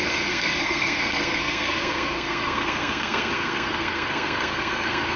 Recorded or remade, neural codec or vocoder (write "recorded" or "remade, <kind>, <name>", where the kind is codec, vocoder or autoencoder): remade, codec, SNAC